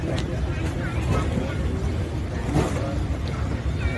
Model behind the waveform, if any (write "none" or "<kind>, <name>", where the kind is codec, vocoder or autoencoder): none